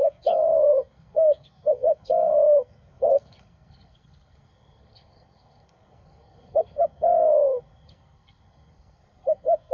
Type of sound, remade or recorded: remade